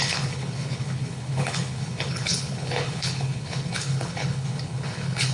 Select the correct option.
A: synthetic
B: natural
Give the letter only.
A